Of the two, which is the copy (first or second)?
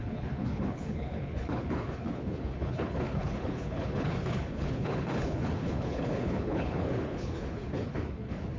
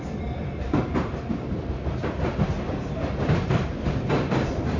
first